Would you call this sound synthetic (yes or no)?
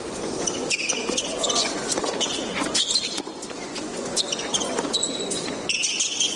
yes